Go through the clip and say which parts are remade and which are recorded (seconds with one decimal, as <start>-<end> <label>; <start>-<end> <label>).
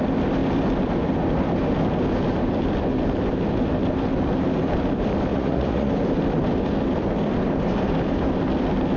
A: 0.0-5.3 recorded; 5.3-5.9 remade; 5.9-9.0 recorded